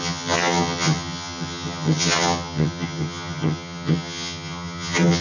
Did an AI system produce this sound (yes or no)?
yes